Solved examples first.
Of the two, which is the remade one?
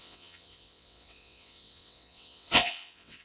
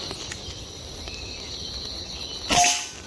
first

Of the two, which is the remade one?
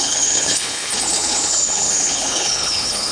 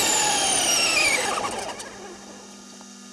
first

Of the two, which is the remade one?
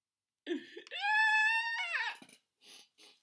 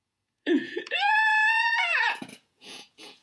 second